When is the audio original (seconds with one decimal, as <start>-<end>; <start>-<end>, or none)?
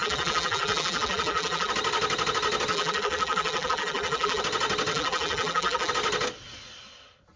1.7-2.7; 4.4-4.9; 5.9-7.4